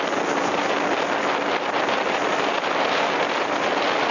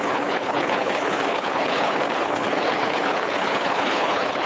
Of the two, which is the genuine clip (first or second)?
first